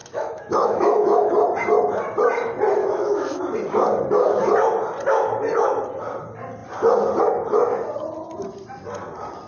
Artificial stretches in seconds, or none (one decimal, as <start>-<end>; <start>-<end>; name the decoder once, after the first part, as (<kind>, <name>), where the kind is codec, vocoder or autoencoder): 0.0-1.3 (autoencoder, DAC-VAE); 2.8-3.4